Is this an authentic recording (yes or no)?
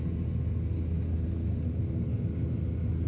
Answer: yes